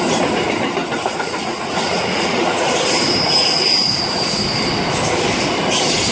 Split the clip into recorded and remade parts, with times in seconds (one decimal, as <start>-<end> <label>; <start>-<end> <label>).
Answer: 0.0-0.8 recorded; 0.8-2.7 remade; 2.7-6.1 recorded